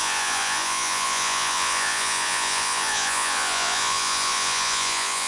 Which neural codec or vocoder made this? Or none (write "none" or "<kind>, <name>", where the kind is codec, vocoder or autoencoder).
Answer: vocoder, Vocos